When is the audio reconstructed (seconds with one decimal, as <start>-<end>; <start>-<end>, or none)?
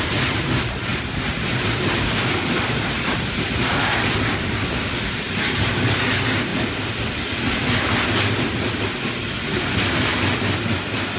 none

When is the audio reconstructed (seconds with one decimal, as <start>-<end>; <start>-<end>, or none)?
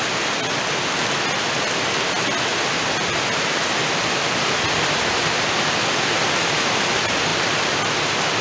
none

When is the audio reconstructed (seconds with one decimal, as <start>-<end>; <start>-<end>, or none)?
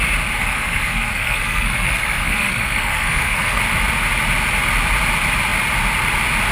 0.4-3.6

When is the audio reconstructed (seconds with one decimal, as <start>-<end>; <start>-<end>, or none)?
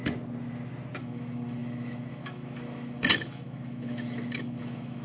1.0-5.0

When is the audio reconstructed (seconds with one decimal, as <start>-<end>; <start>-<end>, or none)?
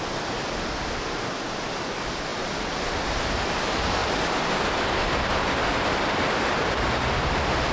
2.3-2.9; 4.0-5.8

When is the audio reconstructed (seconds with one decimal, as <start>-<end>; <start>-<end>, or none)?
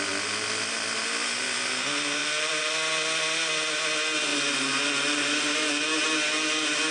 2.2-2.7; 4.3-5.7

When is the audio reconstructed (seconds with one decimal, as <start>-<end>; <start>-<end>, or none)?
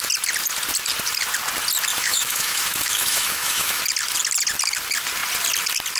1.9-3.8